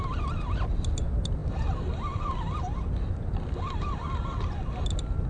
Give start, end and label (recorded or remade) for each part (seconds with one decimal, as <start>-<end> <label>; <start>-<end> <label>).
0.0-5.3 recorded